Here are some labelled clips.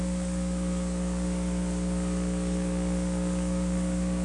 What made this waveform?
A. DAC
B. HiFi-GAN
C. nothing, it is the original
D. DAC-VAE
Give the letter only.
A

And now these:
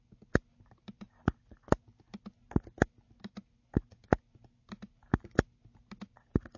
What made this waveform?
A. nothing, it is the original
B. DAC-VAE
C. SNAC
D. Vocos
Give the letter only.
A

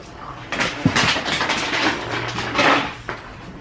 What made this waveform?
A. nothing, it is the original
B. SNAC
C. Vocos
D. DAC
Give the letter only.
A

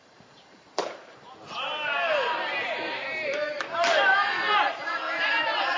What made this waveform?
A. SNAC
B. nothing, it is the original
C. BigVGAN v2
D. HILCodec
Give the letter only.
C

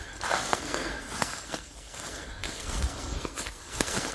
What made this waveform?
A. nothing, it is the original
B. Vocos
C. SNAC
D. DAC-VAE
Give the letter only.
C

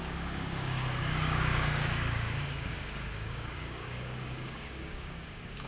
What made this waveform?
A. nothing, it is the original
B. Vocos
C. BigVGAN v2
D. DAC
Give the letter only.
D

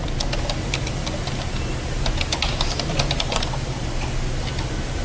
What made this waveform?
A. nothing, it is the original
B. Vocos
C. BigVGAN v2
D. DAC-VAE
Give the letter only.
A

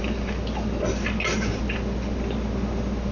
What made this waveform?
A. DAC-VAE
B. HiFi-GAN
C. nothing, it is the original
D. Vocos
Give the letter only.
C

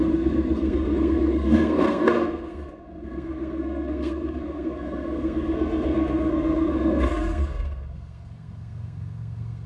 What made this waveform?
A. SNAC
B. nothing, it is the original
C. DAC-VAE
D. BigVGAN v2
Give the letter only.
A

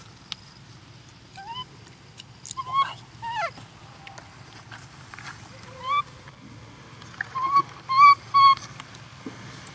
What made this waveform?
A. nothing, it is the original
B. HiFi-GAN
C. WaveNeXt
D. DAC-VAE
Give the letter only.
A